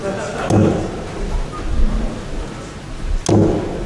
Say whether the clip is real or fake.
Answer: real